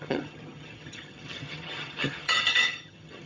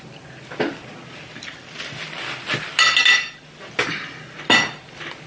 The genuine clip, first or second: second